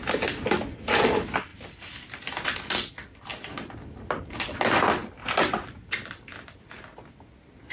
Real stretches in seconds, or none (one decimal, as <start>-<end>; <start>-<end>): 0.0-7.7